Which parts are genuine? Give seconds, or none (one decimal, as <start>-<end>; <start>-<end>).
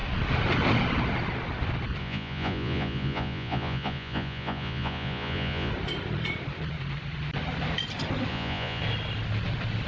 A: 0.0-2.0; 5.7-8.3; 8.8-9.9